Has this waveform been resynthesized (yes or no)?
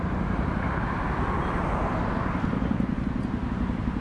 no